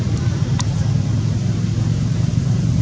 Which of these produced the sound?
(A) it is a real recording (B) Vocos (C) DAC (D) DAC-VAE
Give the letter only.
A